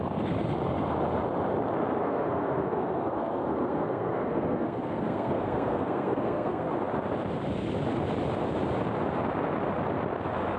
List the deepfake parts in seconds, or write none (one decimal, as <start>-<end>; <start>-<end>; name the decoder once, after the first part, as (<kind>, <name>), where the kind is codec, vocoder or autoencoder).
2.0-6.7 (codec, SNAC)